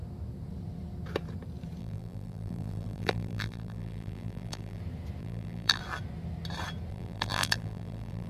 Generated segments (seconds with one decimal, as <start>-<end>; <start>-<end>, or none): 1.8-4.8; 5.2-5.8; 6.9-8.3